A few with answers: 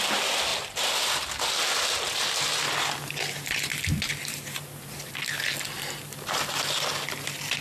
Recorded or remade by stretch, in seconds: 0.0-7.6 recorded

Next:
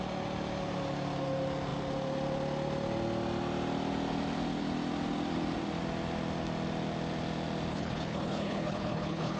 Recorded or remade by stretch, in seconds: 0.0-7.7 recorded; 7.7-9.4 remade

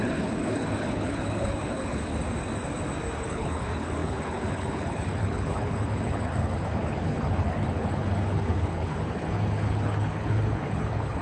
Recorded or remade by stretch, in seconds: 0.0-2.1 remade; 2.1-3.2 recorded; 3.2-11.2 remade

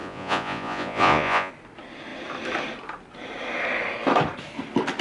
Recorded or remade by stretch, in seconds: 0.0-1.5 remade; 1.5-5.0 recorded

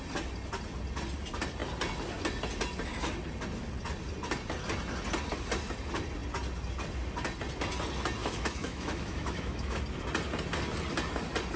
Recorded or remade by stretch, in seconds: 0.0-8.2 recorded; 8.2-9.8 remade; 9.8-11.6 recorded

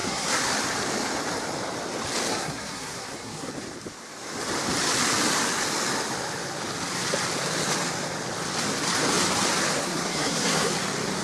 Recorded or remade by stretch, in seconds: 0.0-0.5 remade; 0.5-2.3 recorded; 2.3-3.5 remade; 3.5-9.8 recorded; 9.8-10.7 remade; 10.7-11.2 recorded

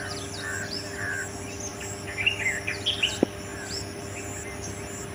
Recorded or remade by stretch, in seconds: 0.0-5.1 recorded